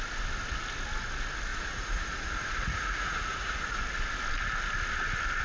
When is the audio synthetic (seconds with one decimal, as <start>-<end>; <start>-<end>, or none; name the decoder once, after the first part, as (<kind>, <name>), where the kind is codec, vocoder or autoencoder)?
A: 1.5-3.8 (vocoder, Vocos)